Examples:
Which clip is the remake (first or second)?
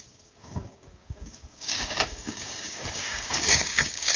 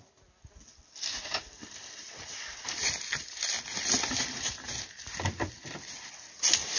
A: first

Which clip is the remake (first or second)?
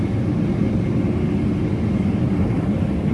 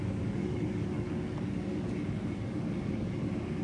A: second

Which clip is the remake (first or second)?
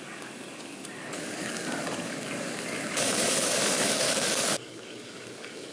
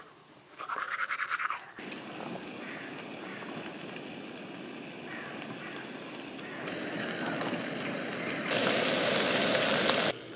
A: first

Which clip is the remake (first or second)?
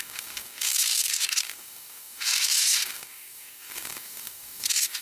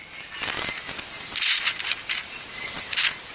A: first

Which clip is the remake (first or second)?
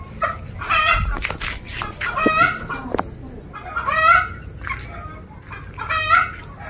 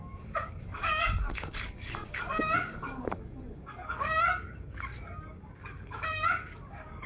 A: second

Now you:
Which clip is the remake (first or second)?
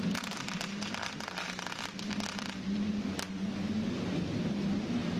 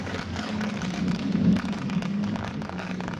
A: second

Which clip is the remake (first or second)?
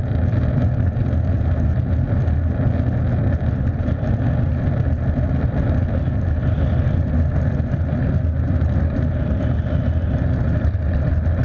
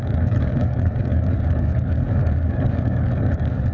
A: second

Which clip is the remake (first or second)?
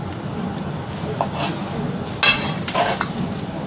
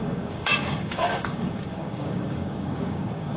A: second